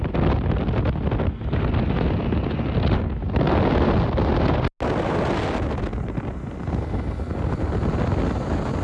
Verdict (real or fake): real